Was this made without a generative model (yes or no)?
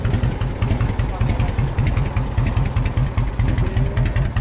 yes